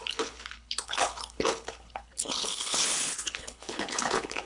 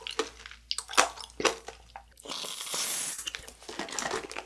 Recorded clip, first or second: second